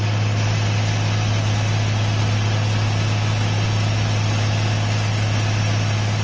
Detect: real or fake real